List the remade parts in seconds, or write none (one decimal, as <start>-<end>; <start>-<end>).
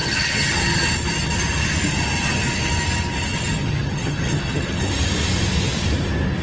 0.0-0.5; 3.3-4.8